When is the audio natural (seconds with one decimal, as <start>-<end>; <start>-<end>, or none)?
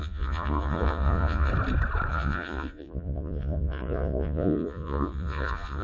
1.5-2.1